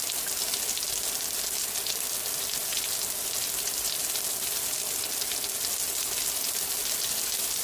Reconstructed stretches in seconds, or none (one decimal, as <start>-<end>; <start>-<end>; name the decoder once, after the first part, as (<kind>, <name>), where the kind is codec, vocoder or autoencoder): none